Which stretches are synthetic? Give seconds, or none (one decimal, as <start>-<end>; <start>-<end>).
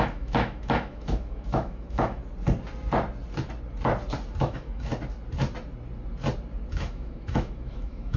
0.0-2.2; 4.4-4.9; 6.7-8.2